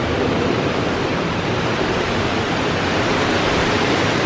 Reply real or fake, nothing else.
fake